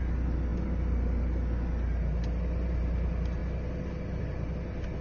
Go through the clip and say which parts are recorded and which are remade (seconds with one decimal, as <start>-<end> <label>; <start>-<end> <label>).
0.0-5.0 recorded